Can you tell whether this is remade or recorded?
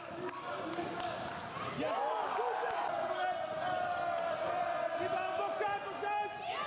recorded